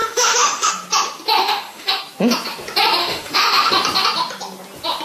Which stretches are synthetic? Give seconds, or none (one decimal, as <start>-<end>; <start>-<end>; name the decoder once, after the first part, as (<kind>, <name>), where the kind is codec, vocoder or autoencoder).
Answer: 0.0-0.7 (autoencoder, DAC-VAE); 1.4-2.0; 3.0-3.7